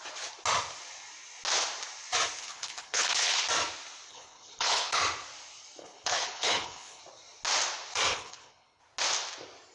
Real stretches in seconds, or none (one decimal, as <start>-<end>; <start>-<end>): 0.0-2.4; 3.4-4.1; 5.0-5.8; 7.0-8.1; 8.8-9.7